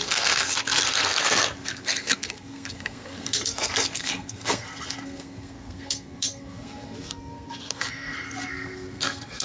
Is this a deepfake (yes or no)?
yes